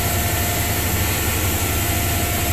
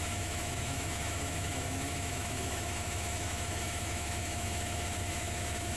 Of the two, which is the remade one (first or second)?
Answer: second